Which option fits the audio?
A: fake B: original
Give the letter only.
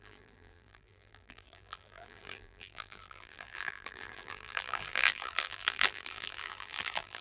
A